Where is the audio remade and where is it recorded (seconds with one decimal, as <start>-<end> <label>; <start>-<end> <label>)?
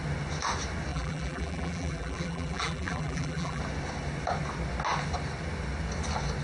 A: 0.0-0.9 recorded; 0.9-3.6 remade; 3.6-6.4 recorded